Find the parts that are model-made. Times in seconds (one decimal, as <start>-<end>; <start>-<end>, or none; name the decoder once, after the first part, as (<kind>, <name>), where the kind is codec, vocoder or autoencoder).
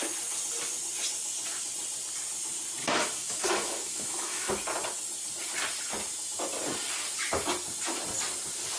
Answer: 2.8-4.5 (autoencoder, DAC-VAE)